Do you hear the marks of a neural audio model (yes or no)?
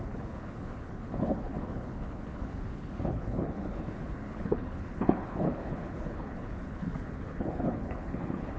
yes